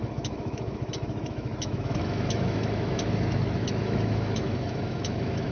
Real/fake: fake